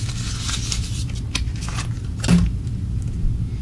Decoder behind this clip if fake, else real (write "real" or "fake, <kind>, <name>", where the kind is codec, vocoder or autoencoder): real